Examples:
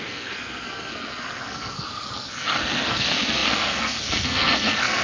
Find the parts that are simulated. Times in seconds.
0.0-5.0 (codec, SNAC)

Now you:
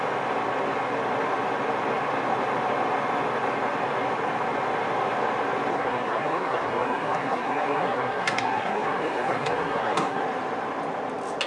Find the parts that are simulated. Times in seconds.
5.7-10.2 (codec, SNAC)

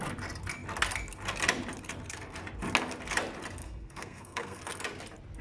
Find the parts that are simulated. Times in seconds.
3.6-4.6 (codec, SNAC)

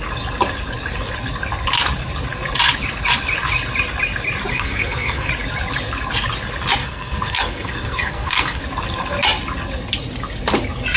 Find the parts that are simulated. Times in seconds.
4.5-5.3 (codec, SNAC); 6.8-8.6

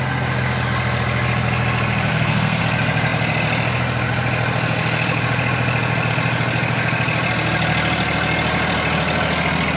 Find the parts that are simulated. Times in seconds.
2.1-2.6 (codec, SNAC)